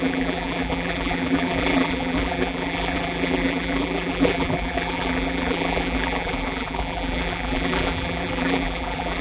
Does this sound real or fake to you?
fake